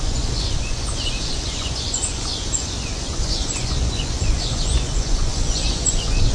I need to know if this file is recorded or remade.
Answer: remade